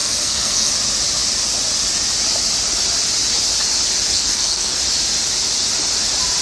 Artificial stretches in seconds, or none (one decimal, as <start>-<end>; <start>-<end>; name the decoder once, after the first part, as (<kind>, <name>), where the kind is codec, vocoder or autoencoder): 0.0-0.7 (codec, SNAC); 4.1-4.8